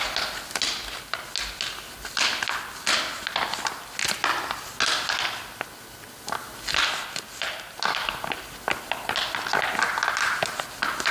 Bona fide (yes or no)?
yes